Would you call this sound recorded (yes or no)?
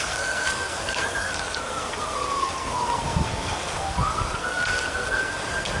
no